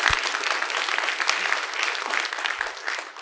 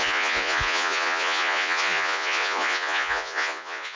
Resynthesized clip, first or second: second